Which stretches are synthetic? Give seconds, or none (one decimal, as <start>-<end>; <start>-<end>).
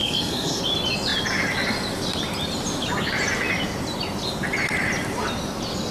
0.0-0.6